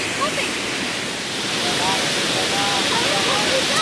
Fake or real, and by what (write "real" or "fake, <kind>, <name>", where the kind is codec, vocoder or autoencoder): real